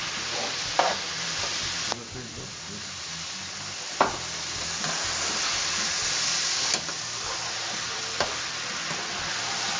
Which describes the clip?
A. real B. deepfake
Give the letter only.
A